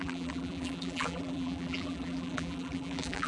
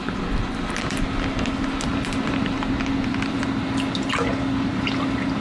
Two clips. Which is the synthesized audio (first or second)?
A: first